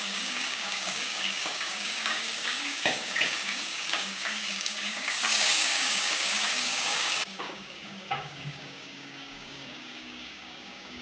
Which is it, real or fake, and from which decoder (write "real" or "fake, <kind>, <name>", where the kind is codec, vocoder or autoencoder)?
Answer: fake, codec, DAC